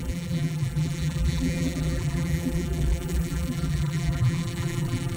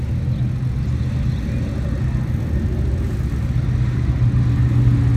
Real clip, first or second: second